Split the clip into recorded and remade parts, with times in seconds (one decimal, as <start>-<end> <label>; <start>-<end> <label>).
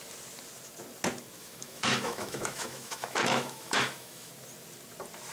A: 0.0-1.4 recorded; 1.4-4.3 remade; 4.3-5.3 recorded